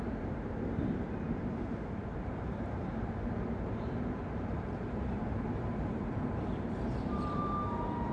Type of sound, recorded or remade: remade